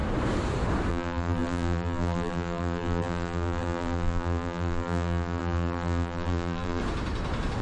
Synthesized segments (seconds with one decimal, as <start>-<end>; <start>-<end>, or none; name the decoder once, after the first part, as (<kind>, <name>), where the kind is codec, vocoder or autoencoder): 0.9-6.8 (vocoder, BigVGAN v2)